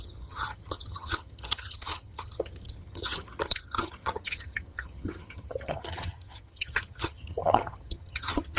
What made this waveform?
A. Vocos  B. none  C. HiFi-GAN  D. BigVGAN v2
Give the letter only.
C